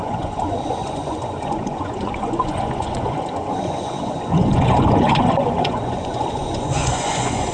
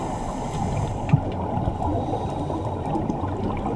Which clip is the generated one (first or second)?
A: first